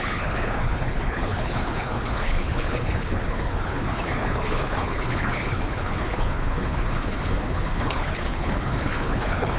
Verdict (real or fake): fake